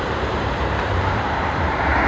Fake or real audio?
fake